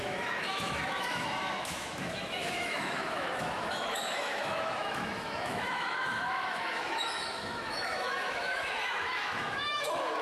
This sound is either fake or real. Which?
fake